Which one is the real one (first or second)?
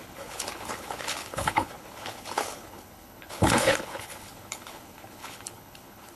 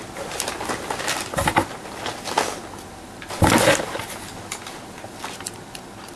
second